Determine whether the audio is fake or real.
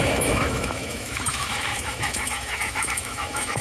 fake